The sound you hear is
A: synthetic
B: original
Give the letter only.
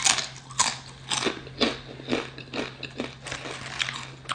B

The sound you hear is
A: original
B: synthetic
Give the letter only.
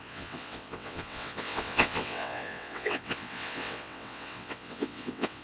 B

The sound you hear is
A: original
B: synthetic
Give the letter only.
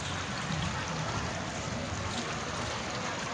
A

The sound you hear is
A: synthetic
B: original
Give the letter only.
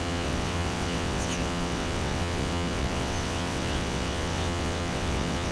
A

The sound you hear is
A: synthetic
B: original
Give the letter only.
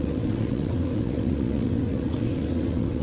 A